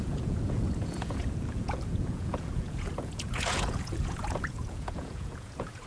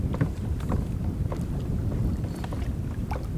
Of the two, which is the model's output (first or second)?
first